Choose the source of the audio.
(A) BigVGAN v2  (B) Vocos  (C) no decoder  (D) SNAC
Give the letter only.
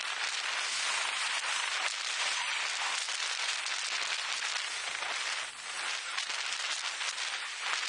C